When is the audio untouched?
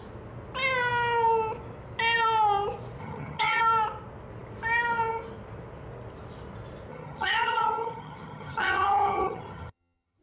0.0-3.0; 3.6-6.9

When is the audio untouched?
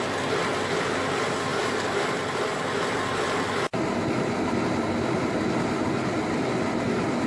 0.0-7.3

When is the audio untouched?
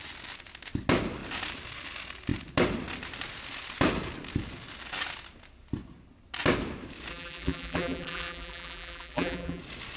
0.0-7.1; 9.6-10.0